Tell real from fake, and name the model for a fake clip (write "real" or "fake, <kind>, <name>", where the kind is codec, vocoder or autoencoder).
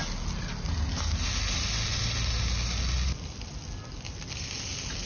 real